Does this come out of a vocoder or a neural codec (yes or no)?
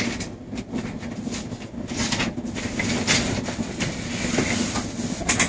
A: no